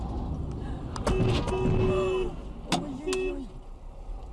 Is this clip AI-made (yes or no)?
no